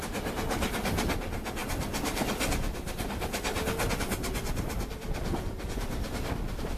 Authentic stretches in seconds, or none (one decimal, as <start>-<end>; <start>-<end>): 0.0-6.8